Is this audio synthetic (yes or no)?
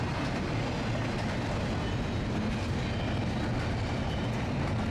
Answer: no